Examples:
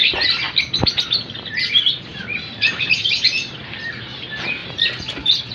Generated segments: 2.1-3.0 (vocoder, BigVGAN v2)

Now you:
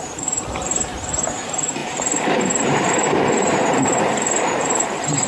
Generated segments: 0.0-5.3 (vocoder, BigVGAN v2)